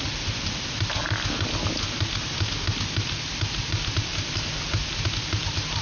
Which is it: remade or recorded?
recorded